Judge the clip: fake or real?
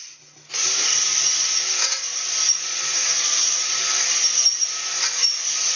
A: real